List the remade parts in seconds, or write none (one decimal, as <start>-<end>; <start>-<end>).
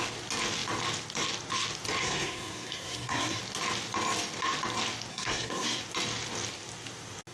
2.0-3.4; 5.1-5.8